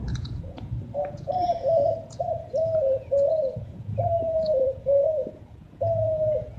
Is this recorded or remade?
remade